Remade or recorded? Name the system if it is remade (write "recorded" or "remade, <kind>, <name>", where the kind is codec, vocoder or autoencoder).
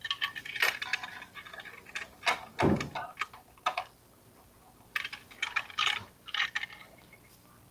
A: recorded